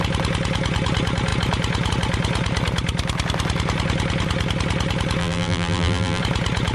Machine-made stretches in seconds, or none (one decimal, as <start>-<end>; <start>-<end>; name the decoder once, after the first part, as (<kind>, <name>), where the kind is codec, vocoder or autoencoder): 5.2-6.2 (vocoder, BigVGAN v2)